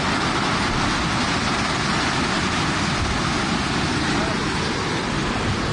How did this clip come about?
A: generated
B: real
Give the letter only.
B